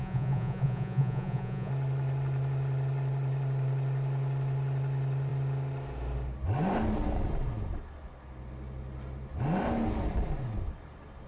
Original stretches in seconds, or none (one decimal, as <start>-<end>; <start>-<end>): 1.7-11.3